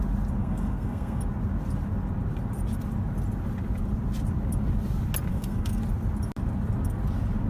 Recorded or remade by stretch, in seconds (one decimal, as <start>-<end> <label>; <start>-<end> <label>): 0.0-0.4 recorded; 0.4-1.2 remade; 1.2-5.3 recorded; 5.3-5.8 remade; 5.8-7.5 recorded